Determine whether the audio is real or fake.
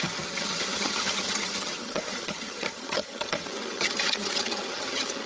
fake